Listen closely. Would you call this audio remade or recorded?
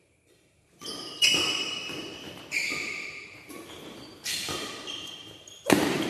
remade